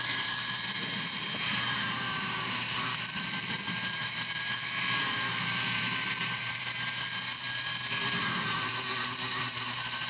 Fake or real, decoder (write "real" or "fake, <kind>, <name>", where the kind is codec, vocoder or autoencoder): fake, vocoder, BigVGAN v2